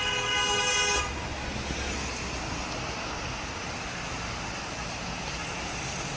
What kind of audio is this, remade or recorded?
recorded